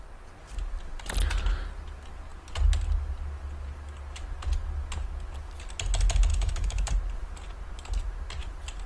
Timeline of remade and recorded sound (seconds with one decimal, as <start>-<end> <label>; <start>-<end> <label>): 0.0-6.3 recorded; 6.3-6.9 remade; 6.9-8.9 recorded